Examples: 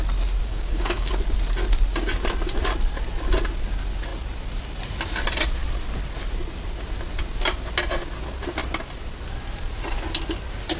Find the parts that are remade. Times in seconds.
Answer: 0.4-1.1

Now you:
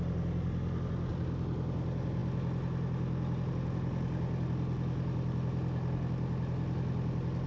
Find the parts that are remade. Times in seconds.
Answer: none